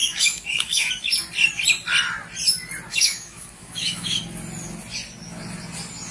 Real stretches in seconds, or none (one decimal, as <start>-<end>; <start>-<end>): 0.9-2.9; 4.2-6.1